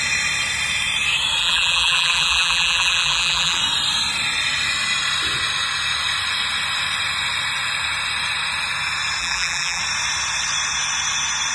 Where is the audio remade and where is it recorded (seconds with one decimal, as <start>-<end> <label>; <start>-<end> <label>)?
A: 0.0-1.4 recorded; 1.4-3.6 remade; 3.6-9.2 recorded; 9.2-9.8 remade; 9.8-11.5 recorded